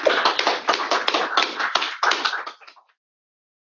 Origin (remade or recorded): recorded